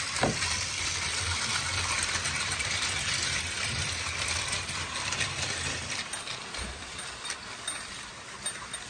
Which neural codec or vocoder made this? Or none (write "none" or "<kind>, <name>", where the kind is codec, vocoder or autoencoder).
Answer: none